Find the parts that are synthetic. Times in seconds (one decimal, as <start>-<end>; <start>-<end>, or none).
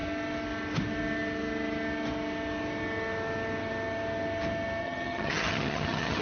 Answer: 4.8-6.2